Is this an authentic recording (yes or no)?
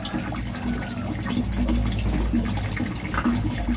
yes